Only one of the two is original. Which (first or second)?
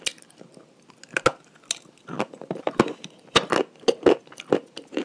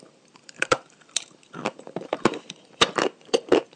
first